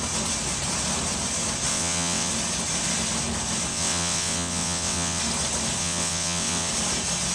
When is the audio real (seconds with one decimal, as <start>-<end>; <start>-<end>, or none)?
0.0-1.7; 2.3-3.7; 5.2-5.8; 6.7-7.3